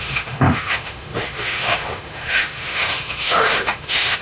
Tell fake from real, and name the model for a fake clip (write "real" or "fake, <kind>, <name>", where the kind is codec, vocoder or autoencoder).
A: fake, autoencoder, DAC-VAE